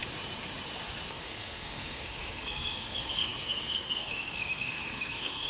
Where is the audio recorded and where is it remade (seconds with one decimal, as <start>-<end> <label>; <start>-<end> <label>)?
0.0-1.1 recorded; 1.1-5.5 remade